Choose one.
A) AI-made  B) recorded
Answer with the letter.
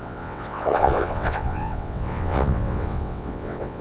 A